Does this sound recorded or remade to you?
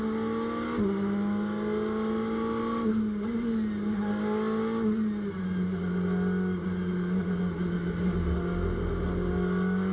recorded